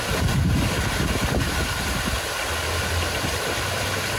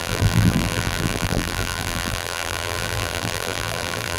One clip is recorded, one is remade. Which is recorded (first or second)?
first